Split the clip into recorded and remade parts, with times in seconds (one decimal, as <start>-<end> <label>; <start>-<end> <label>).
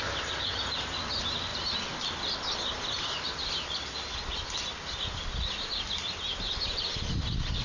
0.0-7.6 recorded